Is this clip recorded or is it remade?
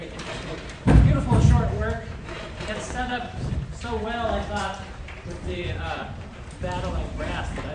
remade